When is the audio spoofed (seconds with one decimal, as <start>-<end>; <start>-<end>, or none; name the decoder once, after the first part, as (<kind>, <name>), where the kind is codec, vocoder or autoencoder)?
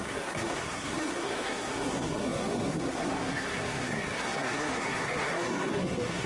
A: 0.0-6.3 (codec, SNAC)